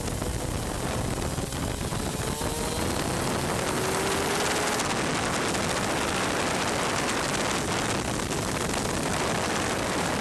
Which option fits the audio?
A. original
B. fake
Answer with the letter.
A